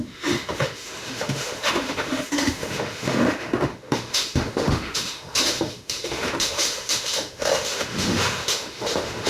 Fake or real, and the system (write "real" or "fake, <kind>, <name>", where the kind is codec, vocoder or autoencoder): fake, autoencoder, DAC-VAE